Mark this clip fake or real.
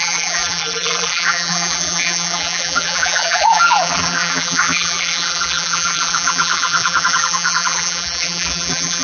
fake